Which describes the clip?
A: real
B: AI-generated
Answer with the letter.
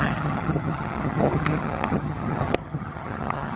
B